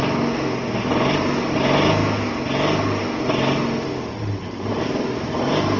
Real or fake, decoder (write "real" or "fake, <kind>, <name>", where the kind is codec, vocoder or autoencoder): real